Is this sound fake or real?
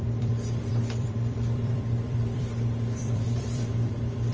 fake